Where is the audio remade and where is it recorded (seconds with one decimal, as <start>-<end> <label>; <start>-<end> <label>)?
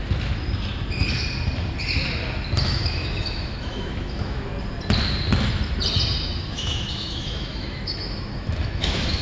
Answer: 0.0-2.6 recorded; 2.6-4.5 remade; 4.5-6.4 recorded; 6.4-9.2 remade